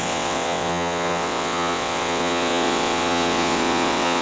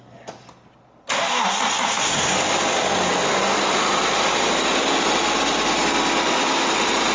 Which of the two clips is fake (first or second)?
first